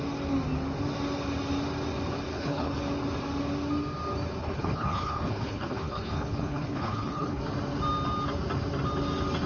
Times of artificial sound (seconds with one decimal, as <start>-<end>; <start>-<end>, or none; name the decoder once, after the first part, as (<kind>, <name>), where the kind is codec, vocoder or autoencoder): 2.3-2.8 (codec, HILCodec); 4.4-7.4